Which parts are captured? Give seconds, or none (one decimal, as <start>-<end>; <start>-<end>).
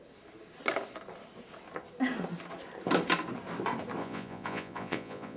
0.0-4.0